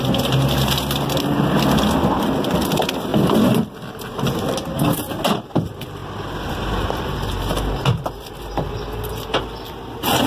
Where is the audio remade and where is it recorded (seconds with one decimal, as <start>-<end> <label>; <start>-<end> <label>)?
0.0-10.3 recorded